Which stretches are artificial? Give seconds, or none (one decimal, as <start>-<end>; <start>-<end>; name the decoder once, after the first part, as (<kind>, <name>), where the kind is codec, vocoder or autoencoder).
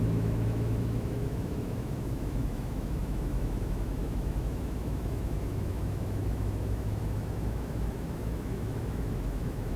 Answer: 0.0-9.8 (autoencoder, DAC-VAE)